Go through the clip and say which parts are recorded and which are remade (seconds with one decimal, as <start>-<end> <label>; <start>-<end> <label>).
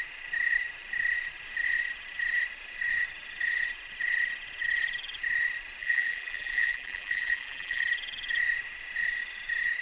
0.0-5.8 recorded; 5.8-7.8 remade; 7.8-9.8 recorded